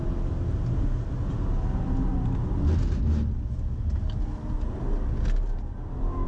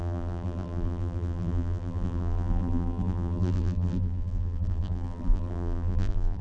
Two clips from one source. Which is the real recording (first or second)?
first